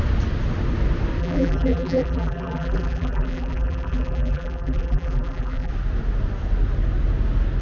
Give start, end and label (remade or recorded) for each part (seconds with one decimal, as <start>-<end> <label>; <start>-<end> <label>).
0.0-1.2 recorded; 1.2-5.7 remade; 5.7-7.6 recorded